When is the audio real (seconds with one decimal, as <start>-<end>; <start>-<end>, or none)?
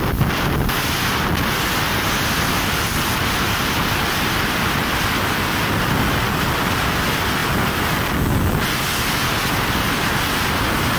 0.0-11.0